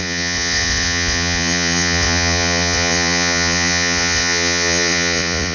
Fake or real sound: fake